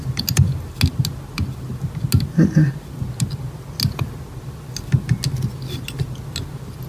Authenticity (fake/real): real